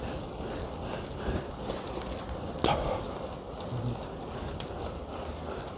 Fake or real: real